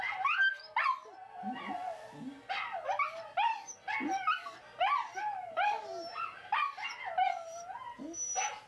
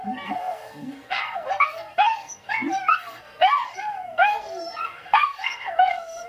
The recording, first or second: first